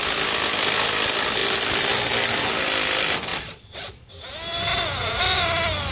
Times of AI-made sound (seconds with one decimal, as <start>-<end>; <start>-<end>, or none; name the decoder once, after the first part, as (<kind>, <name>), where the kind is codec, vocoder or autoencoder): 3.3-4.1 (vocoder, Vocos)